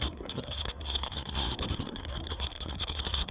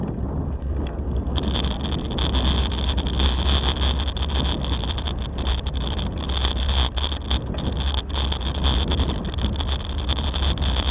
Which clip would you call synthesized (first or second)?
first